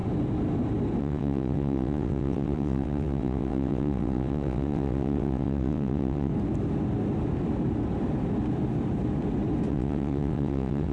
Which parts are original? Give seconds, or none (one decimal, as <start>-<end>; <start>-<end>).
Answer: 0.0-1.0; 6.3-9.7